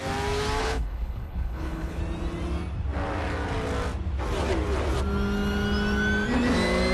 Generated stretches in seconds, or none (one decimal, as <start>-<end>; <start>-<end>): 0.6-2.0